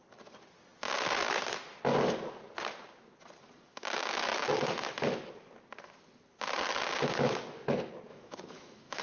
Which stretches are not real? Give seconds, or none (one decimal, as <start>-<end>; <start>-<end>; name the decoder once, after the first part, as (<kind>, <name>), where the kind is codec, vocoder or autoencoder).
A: 8.1-9.0 (autoencoder, DAC-VAE)